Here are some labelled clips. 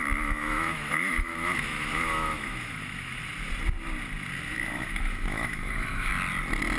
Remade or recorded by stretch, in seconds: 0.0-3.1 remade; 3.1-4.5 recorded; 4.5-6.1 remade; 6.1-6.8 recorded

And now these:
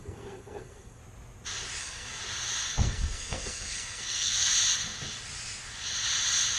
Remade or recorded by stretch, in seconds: 0.0-1.0 remade; 1.0-1.8 recorded; 1.8-2.2 remade; 2.2-2.7 recorded; 2.7-4.5 remade; 4.5-6.6 recorded

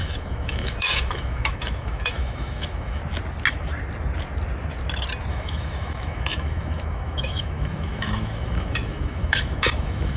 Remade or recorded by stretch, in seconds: 0.0-3.0 remade; 3.0-5.3 recorded; 5.3-10.2 remade

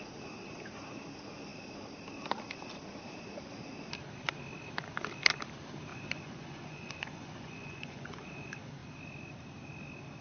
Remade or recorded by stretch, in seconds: 0.0-5.9 recorded; 5.9-8.2 remade; 8.2-10.2 recorded

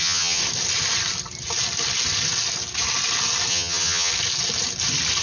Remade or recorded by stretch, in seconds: 0.0-0.4 remade; 0.4-3.5 recorded; 3.5-4.1 remade; 4.1-5.2 recorded

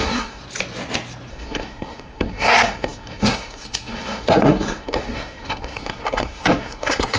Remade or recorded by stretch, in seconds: 0.0-0.4 remade; 0.4-1.3 recorded; 1.3-7.2 remade

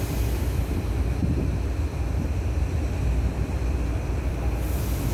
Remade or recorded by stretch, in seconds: 0.0-5.1 recorded